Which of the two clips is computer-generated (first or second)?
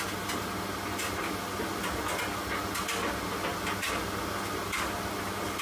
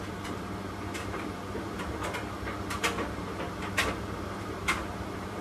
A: second